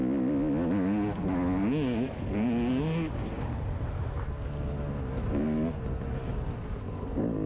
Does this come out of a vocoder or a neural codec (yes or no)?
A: no